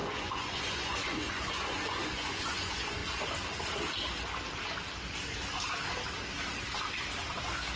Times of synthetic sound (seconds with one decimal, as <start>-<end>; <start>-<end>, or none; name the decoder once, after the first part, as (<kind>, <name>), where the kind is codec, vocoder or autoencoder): 0.0-3.0 (vocoder, Vocos)